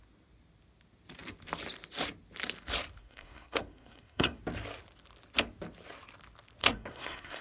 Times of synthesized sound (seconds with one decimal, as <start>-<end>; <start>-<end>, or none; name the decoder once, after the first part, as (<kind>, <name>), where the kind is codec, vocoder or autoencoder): 3.0-4.4 (codec, SNAC); 6.6-7.4